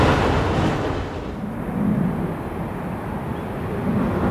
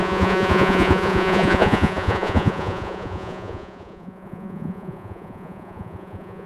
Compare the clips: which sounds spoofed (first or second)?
second